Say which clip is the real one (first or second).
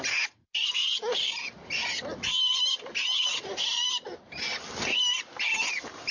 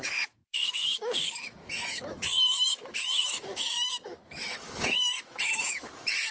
first